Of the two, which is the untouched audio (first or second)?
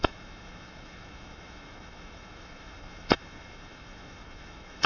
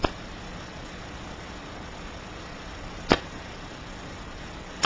second